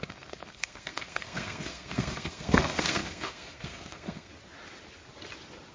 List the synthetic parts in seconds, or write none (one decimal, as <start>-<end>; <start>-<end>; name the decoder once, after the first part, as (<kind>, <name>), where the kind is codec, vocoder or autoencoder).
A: 0.0-4.3 (codec, SNAC)